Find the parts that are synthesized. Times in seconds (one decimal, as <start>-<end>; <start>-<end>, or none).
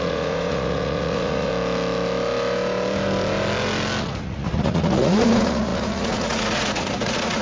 0.0-1.5; 4.0-7.4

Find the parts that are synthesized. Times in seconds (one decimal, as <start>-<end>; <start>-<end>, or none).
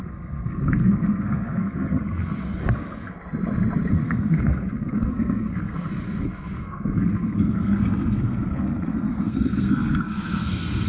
0.0-2.6; 3.9-10.9